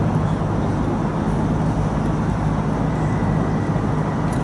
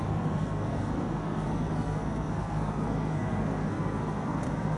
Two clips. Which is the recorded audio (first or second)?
first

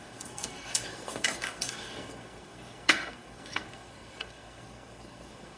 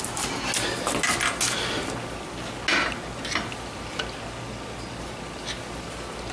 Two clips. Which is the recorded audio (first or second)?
second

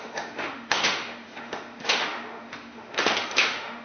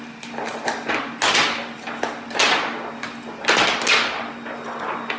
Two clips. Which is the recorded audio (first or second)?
second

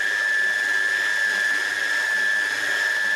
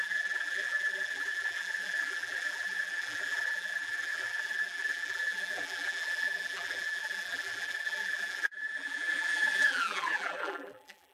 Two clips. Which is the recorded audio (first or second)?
first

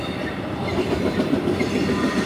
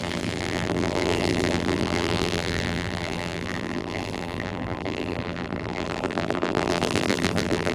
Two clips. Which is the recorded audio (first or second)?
first